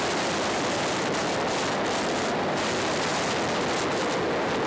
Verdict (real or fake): real